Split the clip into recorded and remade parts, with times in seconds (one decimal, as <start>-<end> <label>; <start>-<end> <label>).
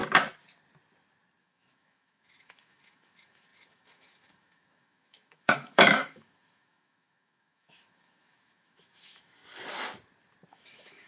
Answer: 0.0-1.4 recorded; 1.4-9.4 remade; 9.4-10.5 recorded; 10.5-11.1 remade